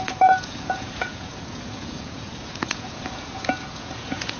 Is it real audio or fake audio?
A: fake